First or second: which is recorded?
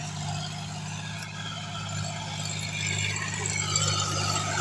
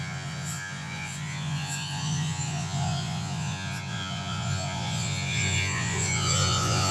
first